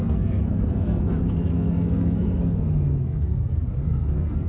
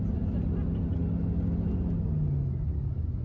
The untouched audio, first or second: second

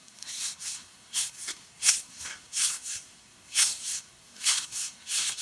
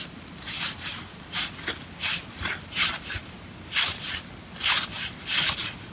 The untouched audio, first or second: second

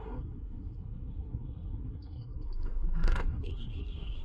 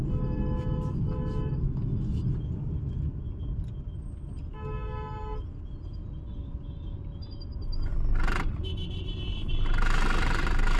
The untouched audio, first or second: second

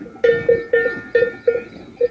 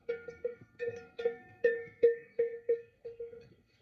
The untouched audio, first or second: first